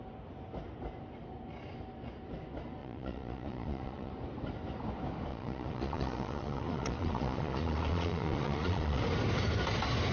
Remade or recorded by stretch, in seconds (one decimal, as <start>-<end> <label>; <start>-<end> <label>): 0.0-2.8 recorded; 2.8-4.1 remade; 4.1-5.3 recorded; 5.3-9.0 remade; 9.0-10.1 recorded